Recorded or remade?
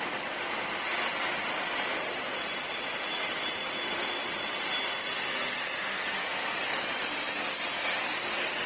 recorded